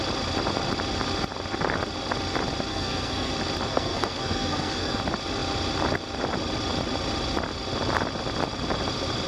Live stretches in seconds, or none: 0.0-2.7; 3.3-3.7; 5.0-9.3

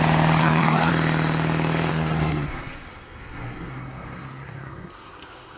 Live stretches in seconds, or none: 0.0-0.4; 0.9-1.9

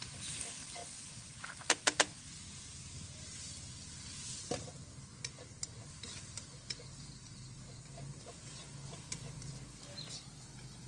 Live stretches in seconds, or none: 0.0-10.9

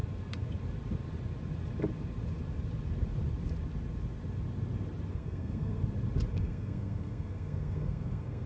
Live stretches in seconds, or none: 0.0-5.1; 5.8-6.3

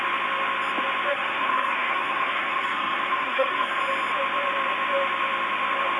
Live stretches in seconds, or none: 0.0-1.1; 3.8-6.0

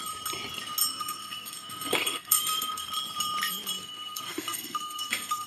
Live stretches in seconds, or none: 0.0-0.9; 2.9-3.8